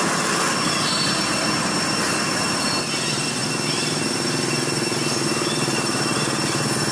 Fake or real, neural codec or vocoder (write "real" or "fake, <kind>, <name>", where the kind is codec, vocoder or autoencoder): real